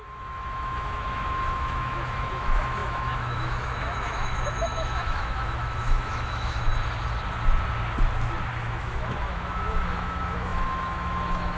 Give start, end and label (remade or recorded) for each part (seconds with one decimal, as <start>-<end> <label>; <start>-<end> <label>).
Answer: 0.0-6.7 remade; 6.7-8.5 recorded; 8.5-11.6 remade